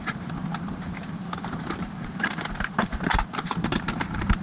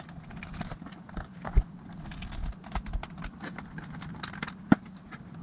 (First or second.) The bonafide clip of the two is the second